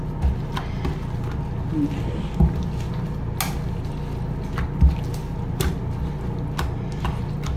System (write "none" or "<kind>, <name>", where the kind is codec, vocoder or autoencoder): none